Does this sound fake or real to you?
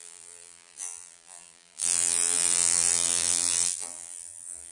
fake